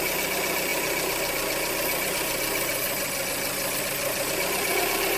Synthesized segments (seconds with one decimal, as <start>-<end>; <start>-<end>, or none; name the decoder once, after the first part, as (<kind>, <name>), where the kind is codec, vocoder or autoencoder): none